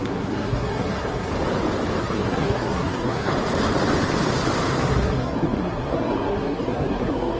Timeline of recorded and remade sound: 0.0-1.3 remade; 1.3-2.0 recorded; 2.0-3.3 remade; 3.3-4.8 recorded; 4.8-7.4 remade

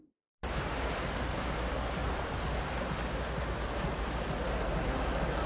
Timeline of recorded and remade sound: 0.0-5.5 recorded

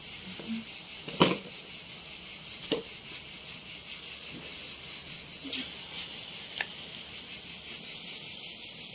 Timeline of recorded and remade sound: 0.0-8.9 recorded

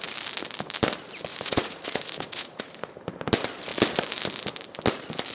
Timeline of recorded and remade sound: 0.0-1.3 recorded; 1.3-2.6 remade; 2.6-5.3 recorded

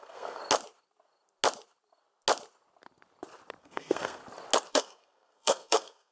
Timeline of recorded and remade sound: 0.0-0.4 remade; 0.4-3.6 recorded; 3.6-4.2 remade; 4.2-4.7 recorded; 4.7-6.1 remade

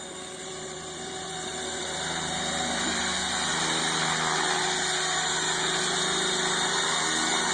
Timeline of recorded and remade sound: 0.0-0.4 recorded; 0.4-3.0 remade; 3.0-7.5 recorded

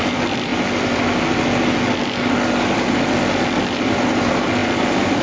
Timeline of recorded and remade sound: 0.0-0.5 remade; 0.5-3.6 recorded; 3.6-5.2 remade

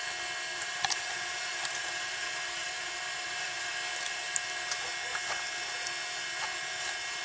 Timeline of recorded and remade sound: 0.0-0.5 recorded; 0.5-3.7 remade; 3.7-7.2 recorded